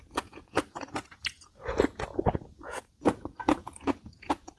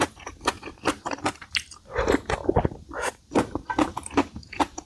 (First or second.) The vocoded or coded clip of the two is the first